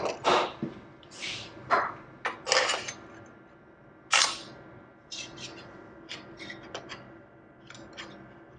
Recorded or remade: recorded